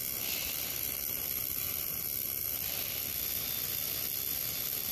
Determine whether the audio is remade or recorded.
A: recorded